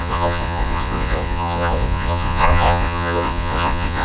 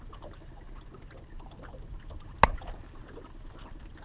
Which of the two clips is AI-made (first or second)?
first